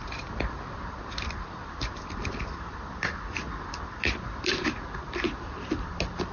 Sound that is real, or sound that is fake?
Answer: fake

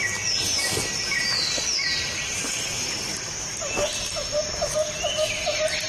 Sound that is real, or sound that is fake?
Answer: real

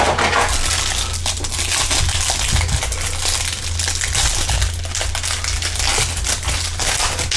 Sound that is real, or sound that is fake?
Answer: real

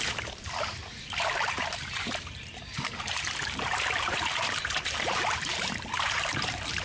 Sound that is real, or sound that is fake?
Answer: fake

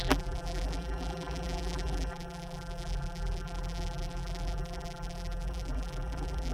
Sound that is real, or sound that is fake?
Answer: fake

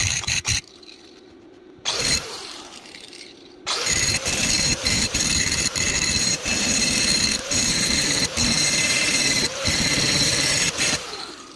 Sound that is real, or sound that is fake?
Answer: fake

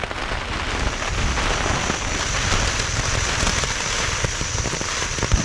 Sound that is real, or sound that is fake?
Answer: real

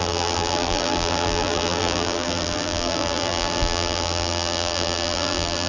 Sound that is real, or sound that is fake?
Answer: fake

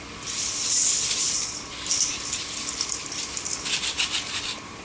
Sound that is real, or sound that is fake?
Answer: real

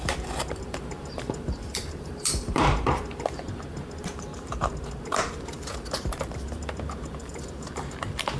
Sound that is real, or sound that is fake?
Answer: fake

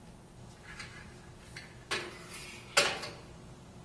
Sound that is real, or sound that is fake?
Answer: real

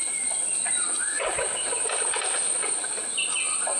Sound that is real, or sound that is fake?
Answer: fake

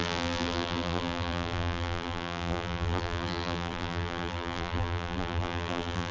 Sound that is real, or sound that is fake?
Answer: fake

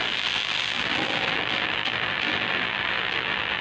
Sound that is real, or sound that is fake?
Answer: fake